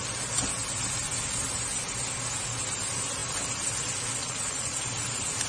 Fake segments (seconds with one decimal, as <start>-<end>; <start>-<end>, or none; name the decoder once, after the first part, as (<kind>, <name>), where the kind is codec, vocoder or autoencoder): 4.2-4.8 (vocoder, Vocos)